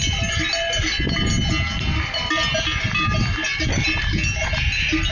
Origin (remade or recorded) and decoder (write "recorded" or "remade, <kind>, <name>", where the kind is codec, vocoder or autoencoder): recorded